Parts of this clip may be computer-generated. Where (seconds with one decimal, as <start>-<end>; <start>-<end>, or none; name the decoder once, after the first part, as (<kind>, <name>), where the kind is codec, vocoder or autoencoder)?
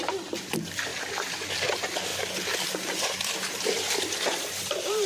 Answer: 0.0-2.1 (vocoder, BigVGAN v2); 4.0-5.1